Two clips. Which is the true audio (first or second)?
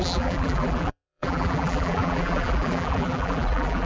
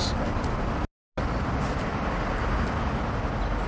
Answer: second